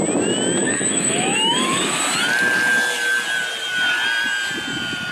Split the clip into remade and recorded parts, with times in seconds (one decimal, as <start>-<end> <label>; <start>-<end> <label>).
0.0-0.6 recorded; 0.6-2.0 remade; 2.0-5.1 recorded